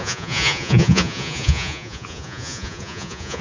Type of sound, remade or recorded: remade